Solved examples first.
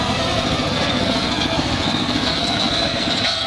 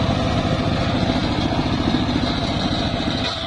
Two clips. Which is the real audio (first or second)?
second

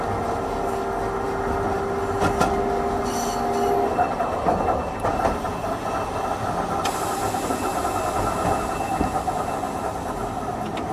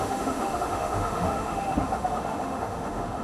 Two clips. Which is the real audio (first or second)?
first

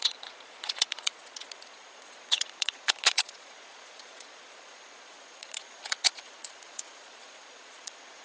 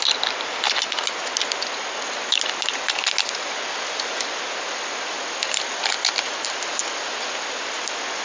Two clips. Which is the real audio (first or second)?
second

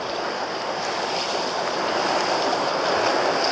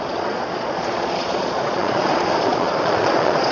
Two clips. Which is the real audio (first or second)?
first